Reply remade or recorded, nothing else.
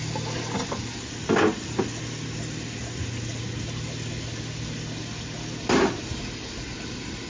recorded